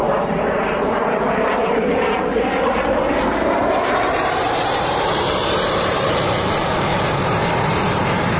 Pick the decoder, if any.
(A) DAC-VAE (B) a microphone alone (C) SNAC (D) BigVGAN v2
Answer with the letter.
D